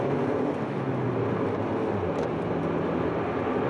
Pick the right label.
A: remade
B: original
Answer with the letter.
B